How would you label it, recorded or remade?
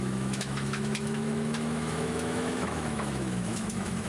remade